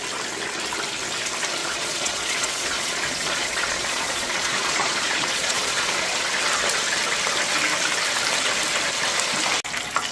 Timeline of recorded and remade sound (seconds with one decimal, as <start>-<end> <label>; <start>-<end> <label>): 0.0-1.6 recorded; 1.6-6.1 remade; 6.1-10.1 recorded